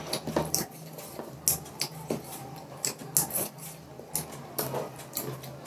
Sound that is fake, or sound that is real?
real